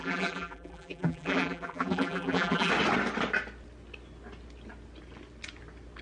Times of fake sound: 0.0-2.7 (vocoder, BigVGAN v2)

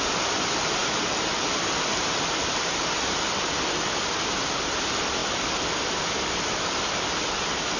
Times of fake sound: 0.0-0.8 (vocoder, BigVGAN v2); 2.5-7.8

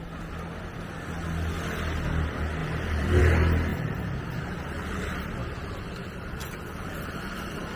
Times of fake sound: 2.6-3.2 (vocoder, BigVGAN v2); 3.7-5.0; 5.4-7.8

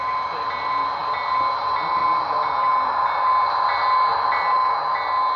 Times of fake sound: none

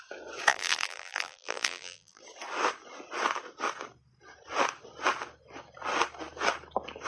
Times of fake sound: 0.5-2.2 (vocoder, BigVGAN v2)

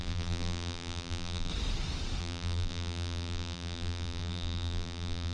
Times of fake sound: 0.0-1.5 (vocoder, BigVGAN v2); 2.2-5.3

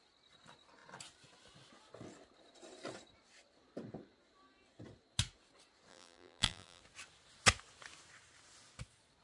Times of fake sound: 5.9-6.8 (vocoder, BigVGAN v2)